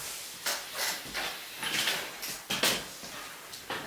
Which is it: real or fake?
real